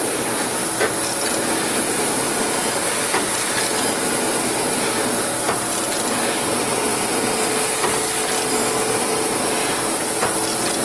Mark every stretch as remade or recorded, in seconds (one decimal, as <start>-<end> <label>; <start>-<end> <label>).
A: 0.0-10.8 recorded